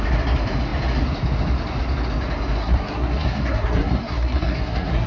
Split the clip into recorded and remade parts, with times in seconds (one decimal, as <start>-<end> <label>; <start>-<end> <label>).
0.0-2.6 recorded; 2.6-5.1 remade